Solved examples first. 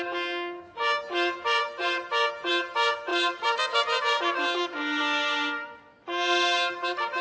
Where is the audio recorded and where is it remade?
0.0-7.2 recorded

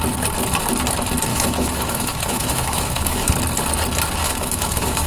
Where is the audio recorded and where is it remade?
0.0-1.3 recorded; 1.3-3.3 remade; 3.3-4.2 recorded; 4.2-5.1 remade

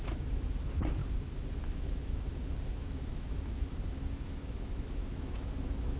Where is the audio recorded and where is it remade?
0.0-1.0 remade; 1.0-1.5 recorded; 1.5-6.0 remade

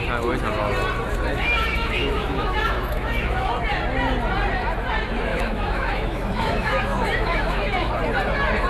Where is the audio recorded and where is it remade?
0.0-1.3 recorded; 1.3-3.5 remade; 3.5-5.3 recorded; 5.3-7.9 remade; 7.9-8.7 recorded

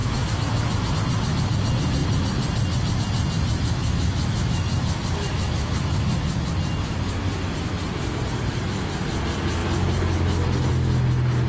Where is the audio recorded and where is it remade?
0.0-0.9 remade; 0.9-3.8 recorded; 3.8-6.5 remade; 6.5-11.5 recorded

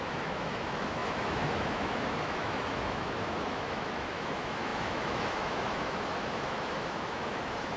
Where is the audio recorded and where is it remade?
0.0-7.8 remade

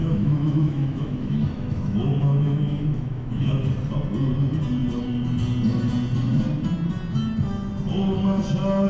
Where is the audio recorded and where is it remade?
0.0-3.6 remade; 3.6-8.9 recorded